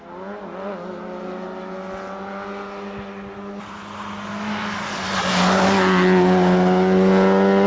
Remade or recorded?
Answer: recorded